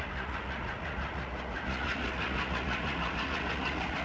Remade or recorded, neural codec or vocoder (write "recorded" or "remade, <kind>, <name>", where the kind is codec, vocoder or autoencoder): remade, vocoder, Vocos